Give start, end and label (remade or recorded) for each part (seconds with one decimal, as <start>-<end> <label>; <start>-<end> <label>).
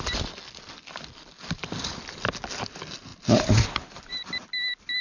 0.0-5.0 recorded